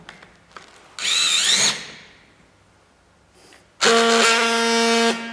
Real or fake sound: real